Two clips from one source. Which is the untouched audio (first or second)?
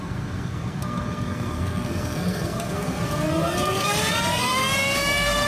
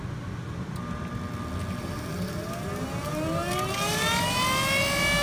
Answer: second